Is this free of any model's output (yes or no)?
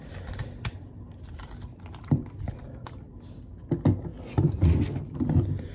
yes